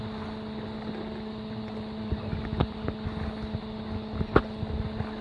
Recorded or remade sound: recorded